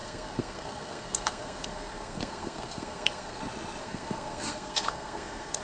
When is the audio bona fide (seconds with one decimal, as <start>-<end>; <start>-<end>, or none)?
3.4-3.8